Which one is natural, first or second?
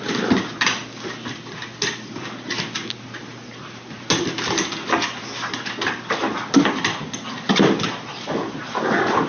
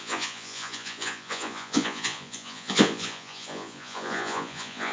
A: first